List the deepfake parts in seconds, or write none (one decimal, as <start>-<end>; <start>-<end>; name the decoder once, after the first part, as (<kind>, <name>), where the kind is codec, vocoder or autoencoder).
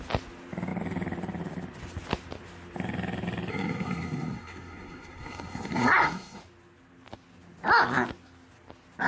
3.5-6.4 (codec, SNAC)